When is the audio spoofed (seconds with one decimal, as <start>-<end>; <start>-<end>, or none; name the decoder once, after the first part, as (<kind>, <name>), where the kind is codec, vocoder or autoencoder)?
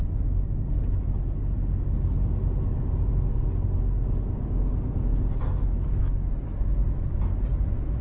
none